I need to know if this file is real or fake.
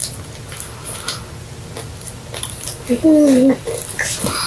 real